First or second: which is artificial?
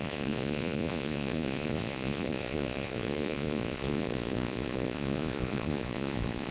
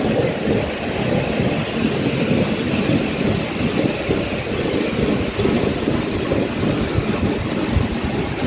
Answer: first